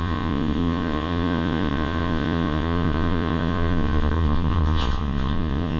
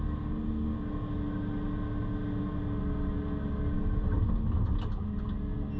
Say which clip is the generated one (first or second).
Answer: first